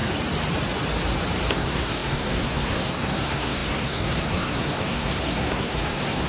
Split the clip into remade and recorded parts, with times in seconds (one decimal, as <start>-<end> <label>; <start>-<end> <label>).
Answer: 0.0-1.5 recorded; 1.5-6.3 remade